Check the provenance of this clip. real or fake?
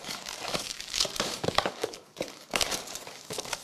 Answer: fake